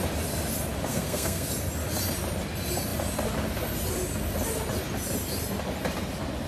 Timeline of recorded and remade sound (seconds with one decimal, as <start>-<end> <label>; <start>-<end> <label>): 0.0-0.9 recorded; 0.9-1.5 remade; 1.5-6.5 recorded